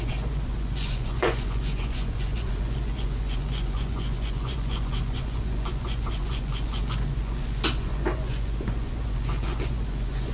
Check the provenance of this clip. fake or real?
fake